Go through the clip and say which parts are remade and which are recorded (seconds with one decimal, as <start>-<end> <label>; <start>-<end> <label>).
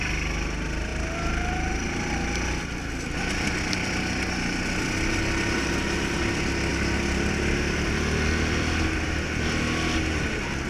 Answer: 0.0-10.7 recorded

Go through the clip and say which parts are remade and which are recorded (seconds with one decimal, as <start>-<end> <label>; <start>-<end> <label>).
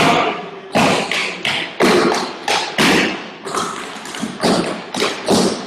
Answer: 0.0-5.7 recorded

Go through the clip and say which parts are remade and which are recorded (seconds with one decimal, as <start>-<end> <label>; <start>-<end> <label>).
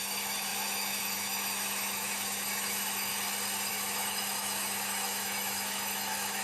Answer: 0.0-3.1 remade; 3.1-3.7 recorded; 3.7-6.4 remade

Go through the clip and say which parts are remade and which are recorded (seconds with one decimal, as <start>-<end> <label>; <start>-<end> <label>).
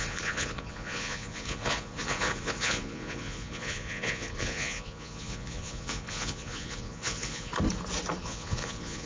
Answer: 0.0-7.5 remade; 7.5-8.2 recorded; 8.2-9.1 remade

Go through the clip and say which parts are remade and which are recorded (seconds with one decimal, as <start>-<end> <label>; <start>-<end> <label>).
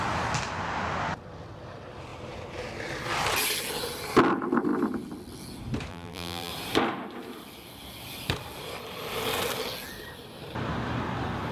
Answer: 0.0-5.9 recorded; 5.9-6.5 remade; 6.5-11.5 recorded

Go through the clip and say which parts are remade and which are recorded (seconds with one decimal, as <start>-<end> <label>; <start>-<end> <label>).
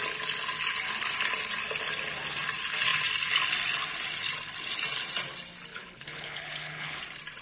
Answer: 0.0-5.7 recorded; 5.7-7.0 remade; 7.0-7.4 recorded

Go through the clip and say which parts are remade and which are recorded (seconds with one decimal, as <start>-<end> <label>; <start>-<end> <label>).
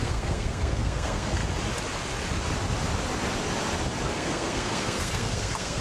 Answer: 0.0-1.4 remade; 1.4-4.0 recorded; 4.0-5.8 remade